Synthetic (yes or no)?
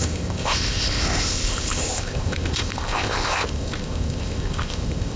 yes